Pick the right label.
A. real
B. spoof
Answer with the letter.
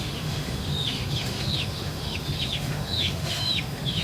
B